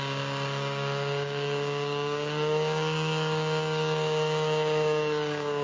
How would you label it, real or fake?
fake